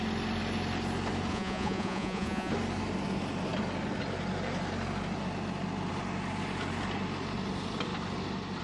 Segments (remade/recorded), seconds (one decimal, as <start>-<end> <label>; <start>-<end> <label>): 0.0-1.3 recorded; 1.3-2.5 remade; 2.5-8.6 recorded